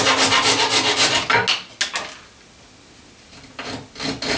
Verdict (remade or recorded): recorded